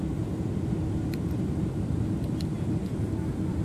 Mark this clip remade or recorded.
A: recorded